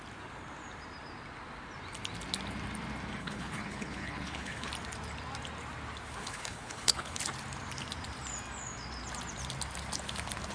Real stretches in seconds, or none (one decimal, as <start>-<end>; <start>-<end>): 0.0-3.2; 4.7-6.2; 7.2-10.5